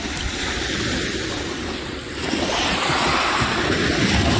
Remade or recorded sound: recorded